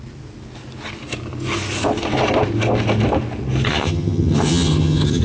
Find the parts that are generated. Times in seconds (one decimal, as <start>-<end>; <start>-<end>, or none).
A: 3.7-5.2